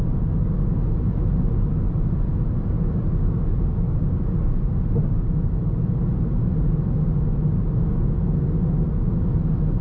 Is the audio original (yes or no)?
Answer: yes